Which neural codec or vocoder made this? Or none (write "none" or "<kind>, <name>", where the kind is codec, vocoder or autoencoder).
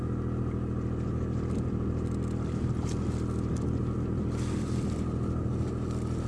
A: none